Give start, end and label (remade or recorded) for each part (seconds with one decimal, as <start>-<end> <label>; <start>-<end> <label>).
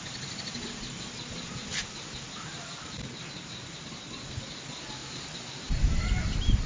0.0-1.7 recorded; 1.7-3.8 remade; 3.8-5.0 recorded; 5.0-6.2 remade; 6.2-6.7 recorded